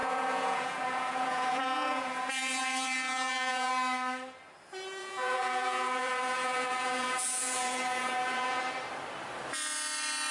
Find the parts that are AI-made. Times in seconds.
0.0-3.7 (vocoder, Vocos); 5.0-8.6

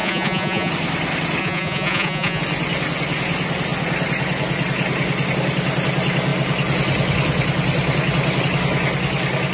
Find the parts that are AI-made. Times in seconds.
0.0-0.7 (vocoder, Vocos); 1.4-2.4

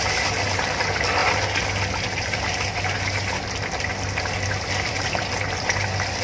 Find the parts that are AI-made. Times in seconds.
none